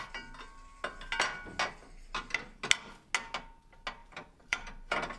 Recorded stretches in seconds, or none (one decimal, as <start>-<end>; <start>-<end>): 0.0-4.0